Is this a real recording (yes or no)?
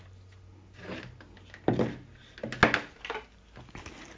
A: yes